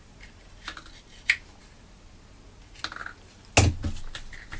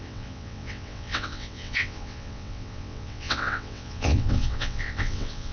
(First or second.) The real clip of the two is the first